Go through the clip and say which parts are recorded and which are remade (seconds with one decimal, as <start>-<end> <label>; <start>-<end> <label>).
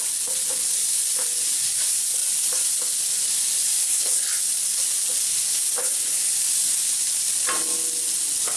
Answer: 0.0-3.8 recorded; 3.8-4.5 remade; 4.5-5.8 recorded; 5.8-6.3 remade; 6.3-8.6 recorded